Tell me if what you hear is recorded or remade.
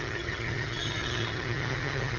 remade